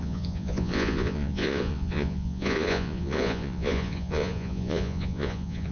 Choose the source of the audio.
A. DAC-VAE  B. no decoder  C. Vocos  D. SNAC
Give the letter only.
C